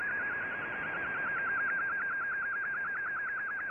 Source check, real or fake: real